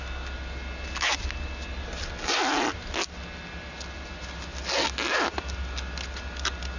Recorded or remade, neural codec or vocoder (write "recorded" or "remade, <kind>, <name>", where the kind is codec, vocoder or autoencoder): recorded